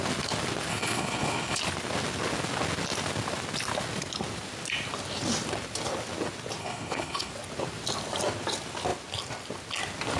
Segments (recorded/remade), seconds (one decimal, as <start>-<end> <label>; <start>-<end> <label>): 0.0-0.7 recorded; 0.7-1.6 remade; 1.6-6.6 recorded; 6.6-7.3 remade; 7.3-10.2 recorded